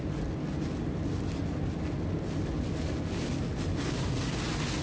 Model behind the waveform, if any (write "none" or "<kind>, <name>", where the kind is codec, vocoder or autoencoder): none